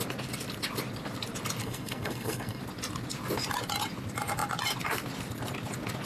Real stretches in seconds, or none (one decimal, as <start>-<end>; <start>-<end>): 0.0-1.6; 2.6-6.1